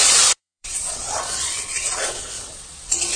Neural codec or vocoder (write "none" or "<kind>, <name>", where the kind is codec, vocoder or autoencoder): vocoder, Vocos